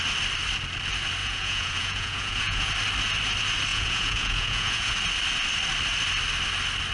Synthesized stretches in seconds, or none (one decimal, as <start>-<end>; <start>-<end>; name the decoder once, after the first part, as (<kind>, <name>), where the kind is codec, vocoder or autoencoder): 1.2-2.7 (vocoder, Vocos); 3.7-4.9